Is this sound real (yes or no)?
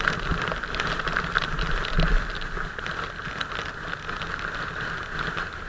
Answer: yes